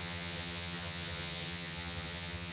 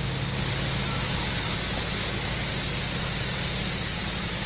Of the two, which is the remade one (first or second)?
first